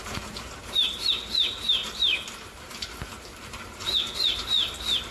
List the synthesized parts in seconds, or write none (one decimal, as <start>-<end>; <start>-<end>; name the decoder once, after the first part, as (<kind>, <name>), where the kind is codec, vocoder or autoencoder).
0.0-4.4 (vocoder, BigVGAN v2)